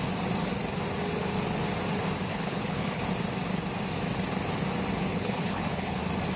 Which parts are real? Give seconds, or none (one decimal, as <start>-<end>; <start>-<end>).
0.0-2.3; 3.0-5.1; 6.0-6.4